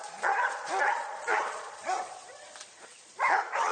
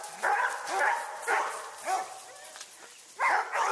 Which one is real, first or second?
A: second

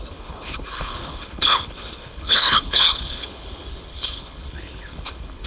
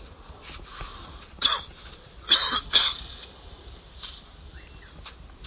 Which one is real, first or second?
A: second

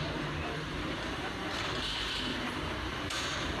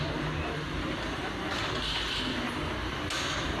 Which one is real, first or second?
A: second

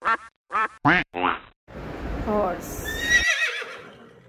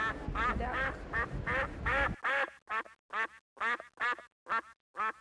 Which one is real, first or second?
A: second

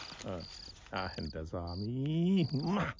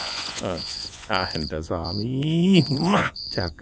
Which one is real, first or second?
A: first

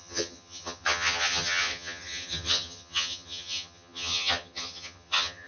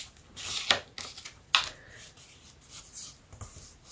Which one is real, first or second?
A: second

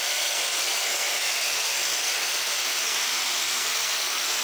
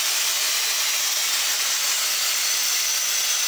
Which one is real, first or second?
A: second